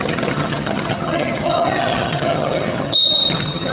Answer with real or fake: fake